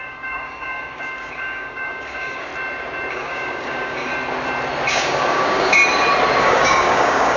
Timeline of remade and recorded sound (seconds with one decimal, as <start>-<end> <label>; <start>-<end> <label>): 0.0-2.5 remade; 2.5-3.1 recorded; 3.1-4.1 remade; 4.1-4.9 recorded; 4.9-5.8 remade; 5.8-6.4 recorded; 6.4-7.4 remade